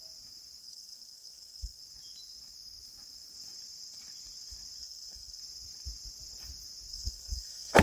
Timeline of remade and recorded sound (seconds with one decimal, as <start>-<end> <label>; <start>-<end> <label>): 0.0-0.6 recorded; 0.6-1.8 remade; 1.8-4.8 recorded; 4.8-5.4 remade; 5.4-6.9 recorded; 6.9-7.8 remade